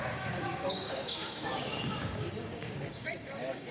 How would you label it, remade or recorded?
remade